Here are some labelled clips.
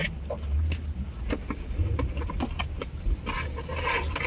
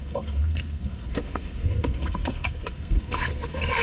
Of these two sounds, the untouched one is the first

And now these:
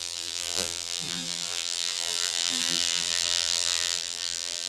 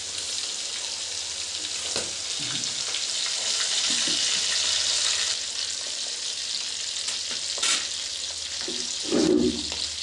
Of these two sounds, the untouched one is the second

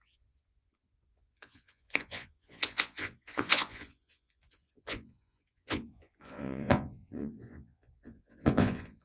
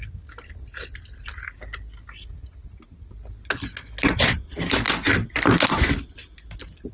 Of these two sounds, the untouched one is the second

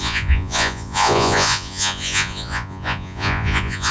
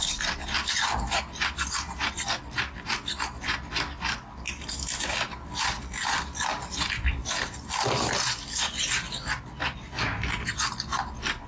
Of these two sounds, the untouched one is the second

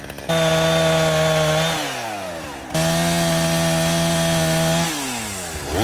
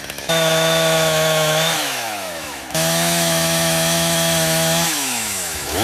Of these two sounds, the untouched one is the first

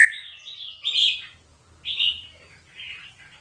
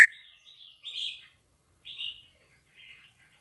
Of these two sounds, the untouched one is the first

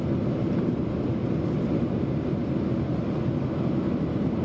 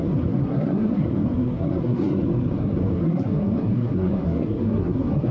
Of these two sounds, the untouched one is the first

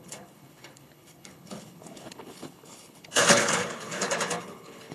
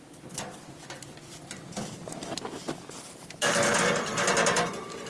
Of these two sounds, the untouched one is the second